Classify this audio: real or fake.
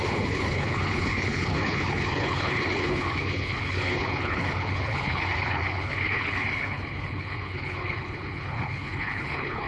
fake